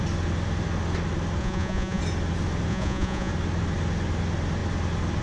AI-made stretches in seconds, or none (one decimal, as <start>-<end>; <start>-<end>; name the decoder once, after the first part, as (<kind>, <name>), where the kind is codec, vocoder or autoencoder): 1.4-2.0 (vocoder, Vocos); 2.7-3.3